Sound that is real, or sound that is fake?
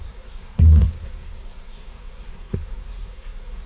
fake